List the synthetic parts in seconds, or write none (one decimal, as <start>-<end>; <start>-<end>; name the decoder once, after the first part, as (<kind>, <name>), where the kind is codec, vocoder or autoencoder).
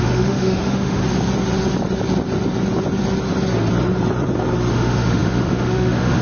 0.0-1.0 (autoencoder, DAC-VAE); 4.7-6.2